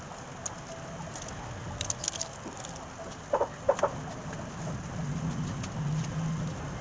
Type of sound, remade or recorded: recorded